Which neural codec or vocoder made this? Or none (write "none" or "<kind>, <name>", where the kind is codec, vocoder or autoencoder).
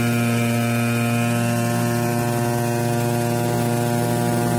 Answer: none